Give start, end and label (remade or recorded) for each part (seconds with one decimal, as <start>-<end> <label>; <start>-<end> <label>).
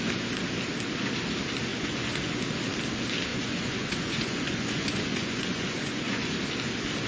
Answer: 0.0-1.7 recorded; 1.7-2.4 remade; 2.4-3.3 recorded; 3.3-6.3 remade; 6.3-7.1 recorded